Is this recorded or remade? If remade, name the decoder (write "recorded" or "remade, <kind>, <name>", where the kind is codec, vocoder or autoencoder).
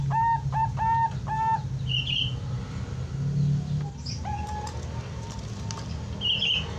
recorded